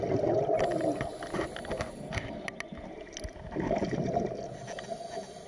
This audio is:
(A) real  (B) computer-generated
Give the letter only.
A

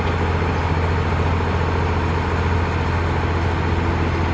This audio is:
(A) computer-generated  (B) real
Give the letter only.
B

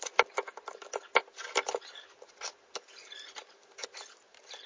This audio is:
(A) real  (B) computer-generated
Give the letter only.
A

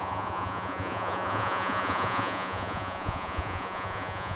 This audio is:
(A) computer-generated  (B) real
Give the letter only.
A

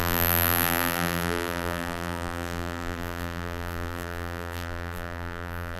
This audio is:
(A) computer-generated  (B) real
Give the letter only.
A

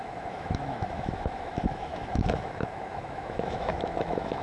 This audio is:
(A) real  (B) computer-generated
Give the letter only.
B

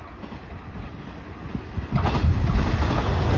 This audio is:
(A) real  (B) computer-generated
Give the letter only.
A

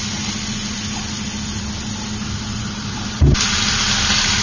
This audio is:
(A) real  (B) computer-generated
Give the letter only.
A